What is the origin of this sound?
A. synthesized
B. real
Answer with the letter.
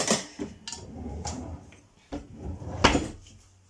B